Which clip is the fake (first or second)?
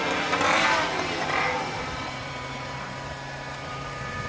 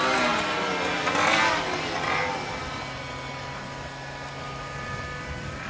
first